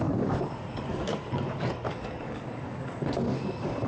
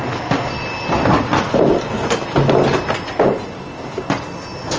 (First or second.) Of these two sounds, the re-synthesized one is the first